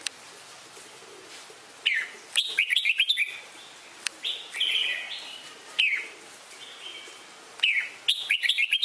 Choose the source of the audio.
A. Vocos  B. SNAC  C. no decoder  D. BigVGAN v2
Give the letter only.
C